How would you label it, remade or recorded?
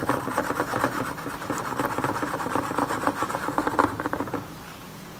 recorded